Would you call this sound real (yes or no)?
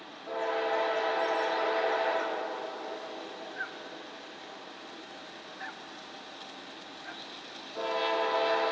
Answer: yes